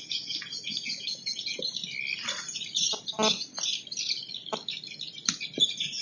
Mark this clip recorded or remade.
recorded